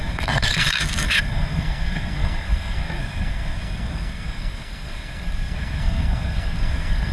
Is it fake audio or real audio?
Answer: fake